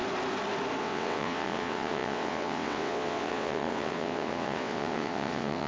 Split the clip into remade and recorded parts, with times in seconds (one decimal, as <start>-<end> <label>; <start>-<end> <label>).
0.0-0.8 recorded; 0.8-5.7 remade